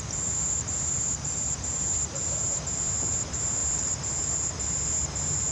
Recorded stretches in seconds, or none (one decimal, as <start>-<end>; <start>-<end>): none